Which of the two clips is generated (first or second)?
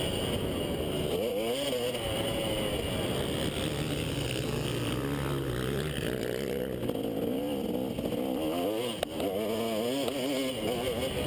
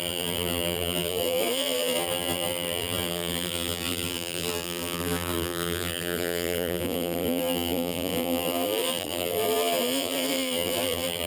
second